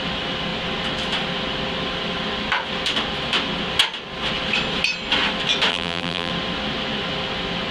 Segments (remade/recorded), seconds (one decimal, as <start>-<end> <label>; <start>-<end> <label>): 0.0-5.7 recorded; 5.7-6.3 remade; 6.3-7.7 recorded